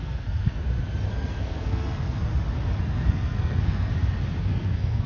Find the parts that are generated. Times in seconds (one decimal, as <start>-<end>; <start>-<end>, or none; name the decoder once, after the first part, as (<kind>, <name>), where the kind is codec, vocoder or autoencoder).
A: 0.0-0.6 (codec, SNAC); 1.1-2.3; 2.8-3.9; 4.4-5.1